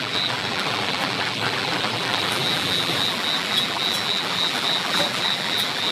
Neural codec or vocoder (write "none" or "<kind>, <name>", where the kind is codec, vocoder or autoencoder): vocoder, BigVGAN v2